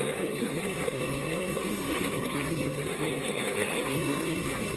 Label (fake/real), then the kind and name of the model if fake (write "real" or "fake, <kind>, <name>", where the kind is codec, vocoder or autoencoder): fake, codec, SNAC